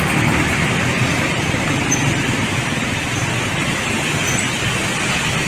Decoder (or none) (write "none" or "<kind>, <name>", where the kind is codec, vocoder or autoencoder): none